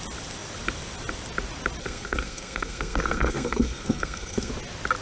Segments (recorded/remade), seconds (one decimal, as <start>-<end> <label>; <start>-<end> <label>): 0.0-1.8 recorded; 1.8-4.5 remade; 4.5-5.0 recorded